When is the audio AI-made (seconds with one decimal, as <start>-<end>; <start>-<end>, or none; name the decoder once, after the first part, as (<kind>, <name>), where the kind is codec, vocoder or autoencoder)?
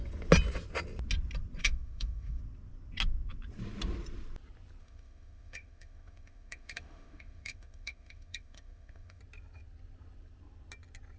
1.6-2.4 (autoencoder, DAC-VAE); 4.8-9.2